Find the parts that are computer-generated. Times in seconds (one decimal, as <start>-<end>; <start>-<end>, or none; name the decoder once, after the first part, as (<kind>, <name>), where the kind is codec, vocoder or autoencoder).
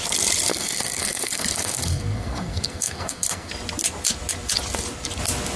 0.5-3.5 (codec, SNAC)